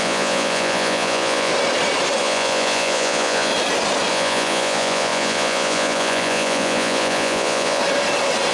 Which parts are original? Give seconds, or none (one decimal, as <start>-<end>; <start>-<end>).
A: 1.5-2.2; 3.5-4.1; 7.8-8.5

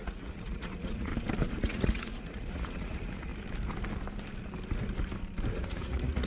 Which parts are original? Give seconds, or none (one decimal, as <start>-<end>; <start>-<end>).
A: 1.1-1.6; 3.3-5.5